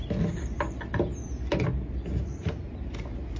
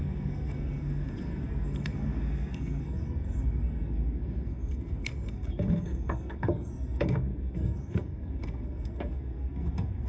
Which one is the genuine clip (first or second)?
first